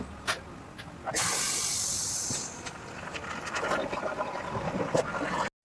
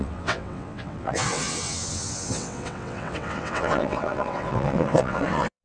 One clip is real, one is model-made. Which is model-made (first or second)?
second